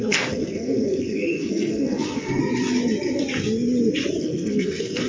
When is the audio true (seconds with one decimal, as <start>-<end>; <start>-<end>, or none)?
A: 2.4-4.2